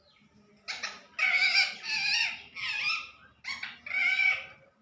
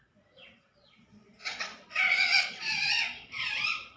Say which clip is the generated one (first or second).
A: second